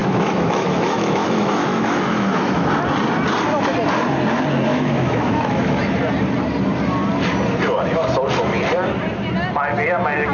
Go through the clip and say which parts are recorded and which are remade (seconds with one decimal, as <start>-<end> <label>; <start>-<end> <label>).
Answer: 0.0-2.7 remade; 2.7-4.7 recorded; 4.7-5.8 remade; 5.8-10.3 recorded